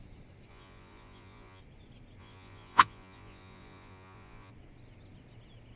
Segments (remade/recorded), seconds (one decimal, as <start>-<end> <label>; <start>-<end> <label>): 0.0-0.5 recorded; 0.5-1.6 remade; 1.6-2.2 recorded; 2.2-4.5 remade; 4.5-5.8 recorded